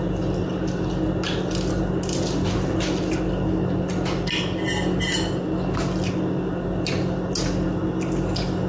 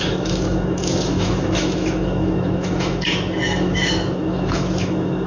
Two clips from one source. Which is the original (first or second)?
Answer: first